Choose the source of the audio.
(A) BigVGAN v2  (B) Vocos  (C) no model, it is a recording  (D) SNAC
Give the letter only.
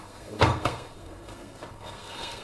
D